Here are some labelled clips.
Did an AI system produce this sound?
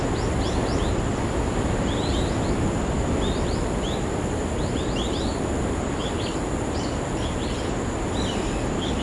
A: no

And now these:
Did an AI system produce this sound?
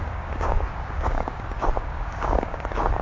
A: yes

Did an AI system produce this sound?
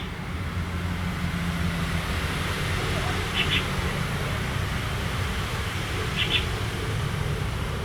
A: no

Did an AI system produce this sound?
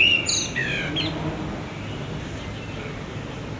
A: no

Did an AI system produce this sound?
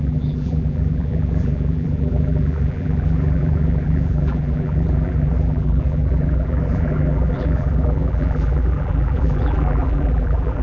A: yes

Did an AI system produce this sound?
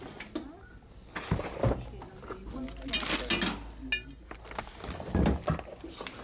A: no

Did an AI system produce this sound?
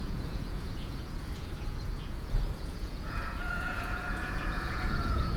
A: yes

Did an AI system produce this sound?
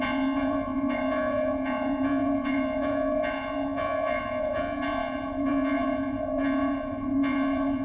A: yes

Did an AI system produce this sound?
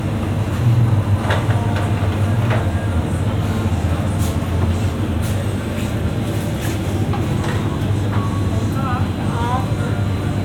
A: no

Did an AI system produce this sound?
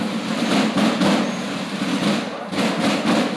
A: no